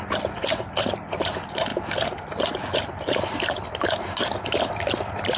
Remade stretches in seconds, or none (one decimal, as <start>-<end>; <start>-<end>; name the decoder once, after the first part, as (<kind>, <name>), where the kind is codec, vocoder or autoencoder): none